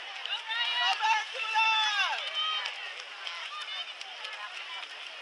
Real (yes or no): yes